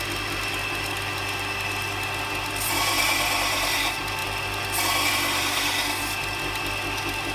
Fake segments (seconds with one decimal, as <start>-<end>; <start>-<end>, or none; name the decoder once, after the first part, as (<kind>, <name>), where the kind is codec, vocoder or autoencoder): none